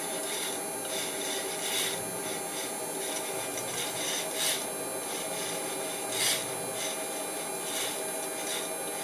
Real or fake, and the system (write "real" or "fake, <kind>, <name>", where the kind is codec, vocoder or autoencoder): real